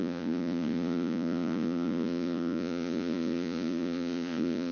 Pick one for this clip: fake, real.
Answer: fake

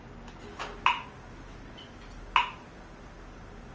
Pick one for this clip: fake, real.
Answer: real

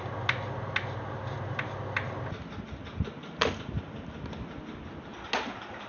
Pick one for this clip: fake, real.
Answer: real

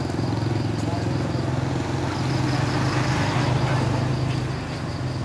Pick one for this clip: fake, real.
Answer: real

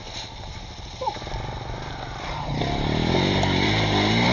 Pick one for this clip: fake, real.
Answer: fake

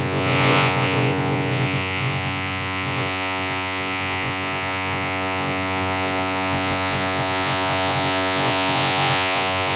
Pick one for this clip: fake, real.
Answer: fake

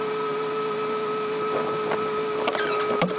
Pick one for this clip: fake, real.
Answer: real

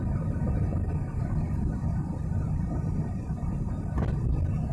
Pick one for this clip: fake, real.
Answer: real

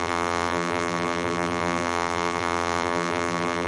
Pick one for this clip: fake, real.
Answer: fake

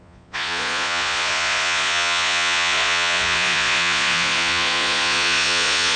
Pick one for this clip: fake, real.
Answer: fake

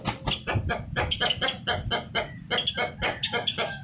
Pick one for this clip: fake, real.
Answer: real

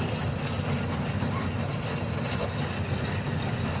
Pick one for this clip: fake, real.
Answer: real